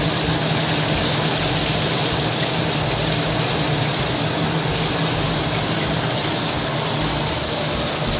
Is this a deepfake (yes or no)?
no